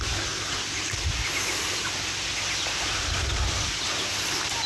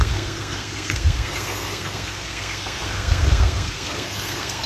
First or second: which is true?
first